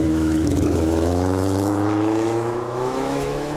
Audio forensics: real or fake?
fake